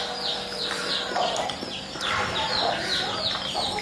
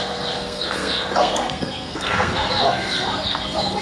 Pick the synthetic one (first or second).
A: second